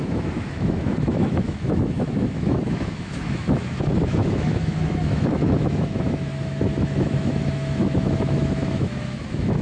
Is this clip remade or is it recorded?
remade